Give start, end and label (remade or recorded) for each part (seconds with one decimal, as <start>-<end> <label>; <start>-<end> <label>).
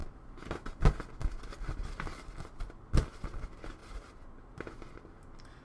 0.0-5.6 recorded